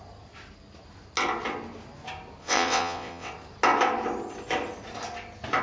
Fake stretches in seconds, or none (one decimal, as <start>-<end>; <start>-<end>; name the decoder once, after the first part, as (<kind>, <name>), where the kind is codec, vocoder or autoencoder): 2.4-3.3 (vocoder, WaveNeXt)